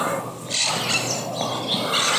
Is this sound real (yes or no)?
yes